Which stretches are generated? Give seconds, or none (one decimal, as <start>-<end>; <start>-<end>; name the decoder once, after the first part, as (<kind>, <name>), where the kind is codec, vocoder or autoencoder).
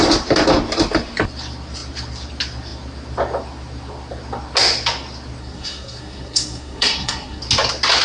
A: 5.4-7.4 (codec, SNAC)